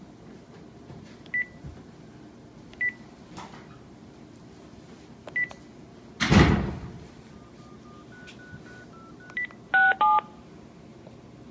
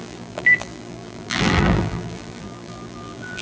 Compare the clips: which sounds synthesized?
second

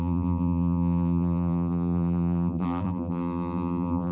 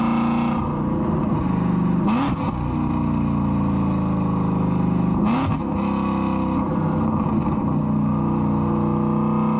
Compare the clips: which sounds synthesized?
first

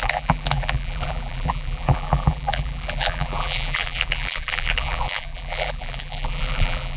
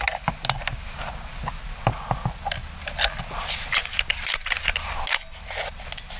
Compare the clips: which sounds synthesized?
first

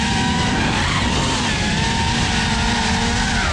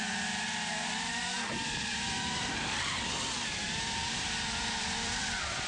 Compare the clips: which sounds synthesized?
second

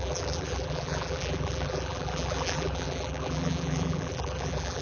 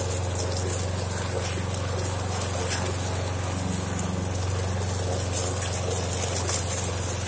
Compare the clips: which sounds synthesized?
first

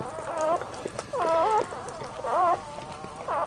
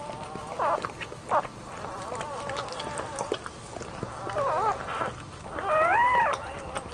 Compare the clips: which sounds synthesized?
first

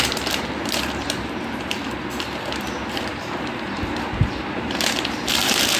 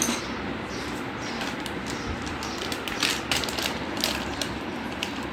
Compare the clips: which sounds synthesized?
second